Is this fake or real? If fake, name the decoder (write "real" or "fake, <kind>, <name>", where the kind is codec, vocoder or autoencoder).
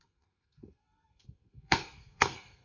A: fake, codec, SNAC